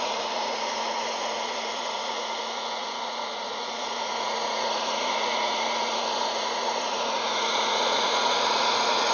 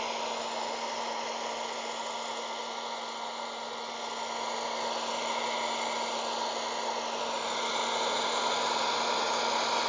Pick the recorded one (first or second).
second